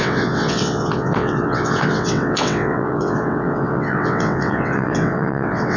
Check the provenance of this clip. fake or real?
fake